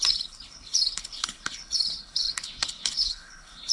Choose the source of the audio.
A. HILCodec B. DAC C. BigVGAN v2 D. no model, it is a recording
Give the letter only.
A